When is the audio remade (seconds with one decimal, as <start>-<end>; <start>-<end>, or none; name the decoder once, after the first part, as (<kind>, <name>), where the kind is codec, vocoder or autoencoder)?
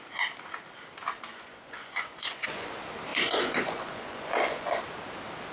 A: 1.3-2.7 (vocoder, Vocos); 3.1-4.8